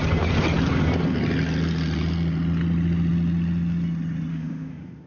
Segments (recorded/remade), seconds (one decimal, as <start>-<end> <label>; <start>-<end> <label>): 0.0-4.3 recorded; 4.3-5.1 remade